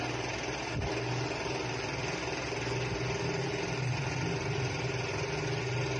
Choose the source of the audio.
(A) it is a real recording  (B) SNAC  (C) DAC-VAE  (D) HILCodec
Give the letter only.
A